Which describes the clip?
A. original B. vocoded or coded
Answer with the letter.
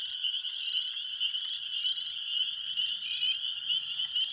A